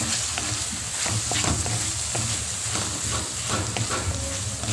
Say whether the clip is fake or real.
real